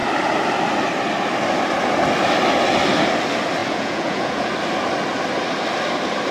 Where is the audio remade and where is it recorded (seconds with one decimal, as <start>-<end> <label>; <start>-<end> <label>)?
0.0-3.6 recorded; 3.6-4.5 remade; 4.5-6.3 recorded